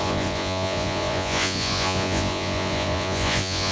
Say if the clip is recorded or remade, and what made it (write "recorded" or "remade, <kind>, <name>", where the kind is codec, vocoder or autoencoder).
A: remade, vocoder, Vocos